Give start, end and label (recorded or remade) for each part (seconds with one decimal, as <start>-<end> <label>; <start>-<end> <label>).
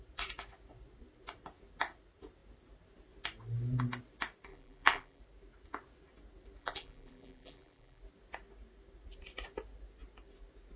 0.0-4.5 recorded; 4.5-5.2 remade; 5.2-6.6 recorded; 6.6-8.0 remade; 8.0-10.8 recorded